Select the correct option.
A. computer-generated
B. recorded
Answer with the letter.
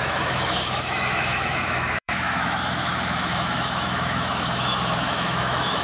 A